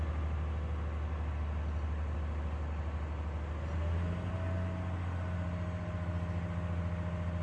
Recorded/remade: recorded